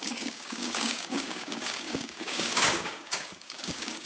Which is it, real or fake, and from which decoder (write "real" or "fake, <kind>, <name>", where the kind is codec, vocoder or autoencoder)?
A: fake, codec, DAC